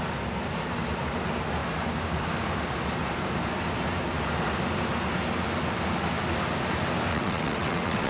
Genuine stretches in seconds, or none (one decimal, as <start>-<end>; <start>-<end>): 0.0-7.1